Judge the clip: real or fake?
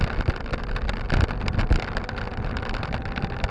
real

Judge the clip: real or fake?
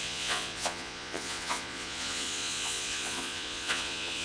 fake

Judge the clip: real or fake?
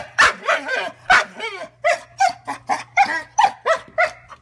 real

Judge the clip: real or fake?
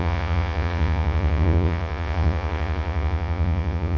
fake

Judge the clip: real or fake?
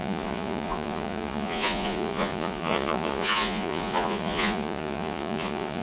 fake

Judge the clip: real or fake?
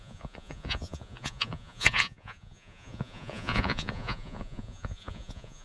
fake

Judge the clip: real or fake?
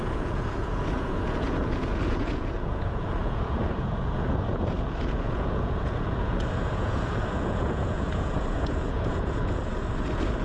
fake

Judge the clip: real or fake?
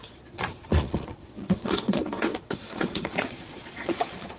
fake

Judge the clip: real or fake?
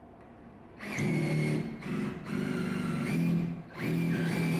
real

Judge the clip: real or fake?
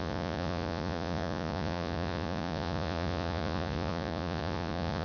fake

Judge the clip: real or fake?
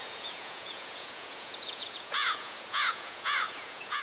fake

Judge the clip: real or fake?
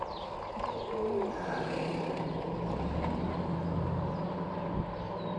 real